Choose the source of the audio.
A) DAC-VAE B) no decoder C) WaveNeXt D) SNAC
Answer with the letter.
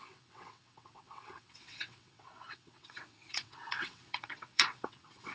C